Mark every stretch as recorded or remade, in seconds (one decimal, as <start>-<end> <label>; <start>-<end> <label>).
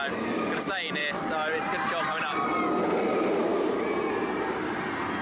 0.0-5.2 recorded